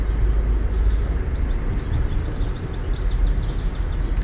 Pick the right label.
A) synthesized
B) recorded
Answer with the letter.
B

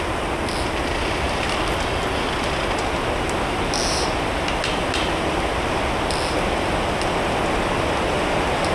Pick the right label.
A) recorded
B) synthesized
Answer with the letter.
A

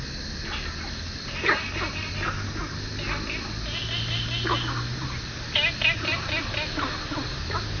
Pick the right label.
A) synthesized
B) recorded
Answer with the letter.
B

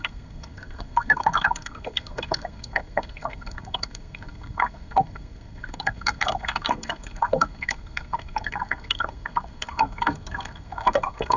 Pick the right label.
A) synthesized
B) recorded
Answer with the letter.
A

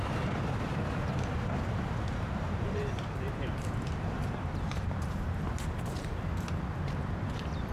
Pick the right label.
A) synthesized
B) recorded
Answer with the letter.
A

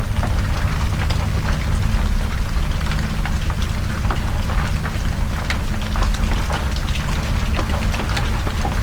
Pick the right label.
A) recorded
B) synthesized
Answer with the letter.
A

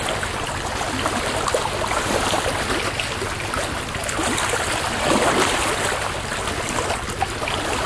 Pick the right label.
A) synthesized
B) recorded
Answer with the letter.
B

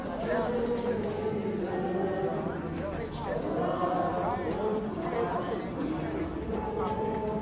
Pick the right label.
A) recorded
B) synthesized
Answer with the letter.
A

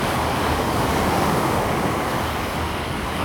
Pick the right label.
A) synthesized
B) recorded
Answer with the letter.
A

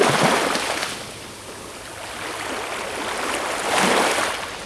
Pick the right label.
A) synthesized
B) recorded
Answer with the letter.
B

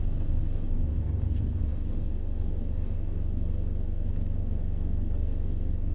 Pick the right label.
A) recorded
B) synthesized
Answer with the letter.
B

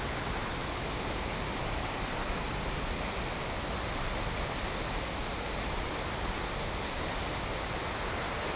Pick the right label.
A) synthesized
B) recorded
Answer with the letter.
B